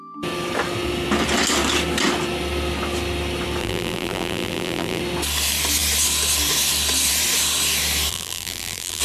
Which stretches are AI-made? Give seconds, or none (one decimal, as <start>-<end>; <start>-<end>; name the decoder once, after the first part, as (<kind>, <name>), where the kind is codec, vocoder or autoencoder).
3.6-5.0 (vocoder, BigVGAN v2); 8.1-9.0